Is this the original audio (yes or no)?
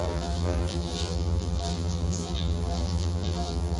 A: no